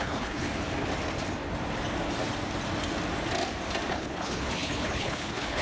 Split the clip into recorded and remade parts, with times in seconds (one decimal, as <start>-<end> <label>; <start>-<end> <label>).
0.0-0.5 remade; 0.5-3.9 recorded; 3.9-5.6 remade